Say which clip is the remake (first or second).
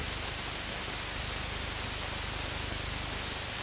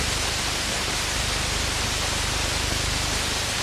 second